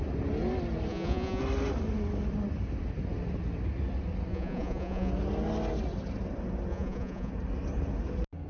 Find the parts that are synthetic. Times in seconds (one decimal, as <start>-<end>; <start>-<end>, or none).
0.9-1.4; 4.3-5.1; 6.7-7.3